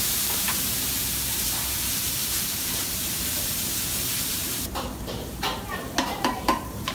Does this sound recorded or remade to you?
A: remade